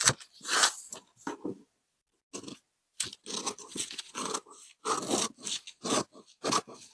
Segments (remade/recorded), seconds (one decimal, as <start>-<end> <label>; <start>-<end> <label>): 0.0-3.6 recorded; 3.6-4.3 remade; 4.3-6.9 recorded